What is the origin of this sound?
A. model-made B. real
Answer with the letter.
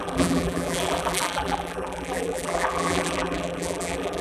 A